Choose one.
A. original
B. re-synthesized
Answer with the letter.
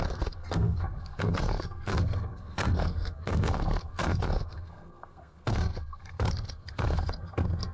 B